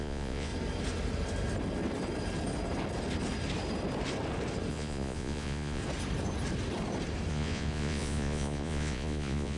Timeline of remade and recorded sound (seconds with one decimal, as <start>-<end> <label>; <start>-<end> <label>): 0.0-0.5 remade; 0.5-4.7 recorded; 4.7-5.8 remade; 5.8-7.3 recorded; 7.3-9.6 remade